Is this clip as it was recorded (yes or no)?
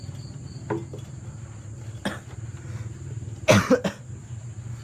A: yes